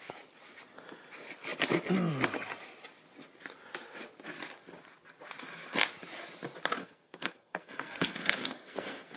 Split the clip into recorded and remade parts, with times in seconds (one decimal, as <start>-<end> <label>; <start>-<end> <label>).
0.0-6.8 recorded; 6.8-9.2 remade